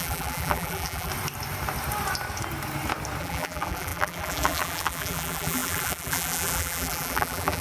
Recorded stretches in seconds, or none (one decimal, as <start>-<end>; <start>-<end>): 1.1-3.2